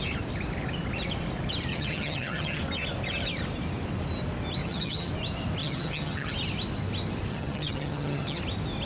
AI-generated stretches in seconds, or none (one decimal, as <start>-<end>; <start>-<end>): 1.7-2.6; 4.6-5.1; 5.6-6.3; 7.3-8.4